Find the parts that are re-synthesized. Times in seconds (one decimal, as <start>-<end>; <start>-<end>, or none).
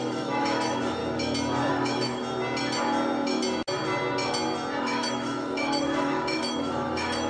0.0-1.0; 1.7-2.2; 4.8-7.3